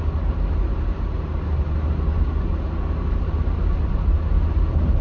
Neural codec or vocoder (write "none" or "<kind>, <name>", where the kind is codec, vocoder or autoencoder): none